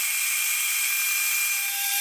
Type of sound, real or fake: fake